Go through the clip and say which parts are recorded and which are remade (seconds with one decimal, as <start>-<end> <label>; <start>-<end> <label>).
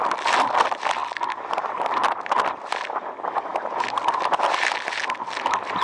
0.0-5.8 recorded